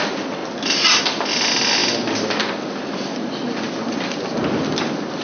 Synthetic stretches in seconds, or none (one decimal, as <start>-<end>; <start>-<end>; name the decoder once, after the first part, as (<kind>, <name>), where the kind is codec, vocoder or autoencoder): none